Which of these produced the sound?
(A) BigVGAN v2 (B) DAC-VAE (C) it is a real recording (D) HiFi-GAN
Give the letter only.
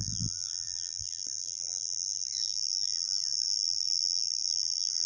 A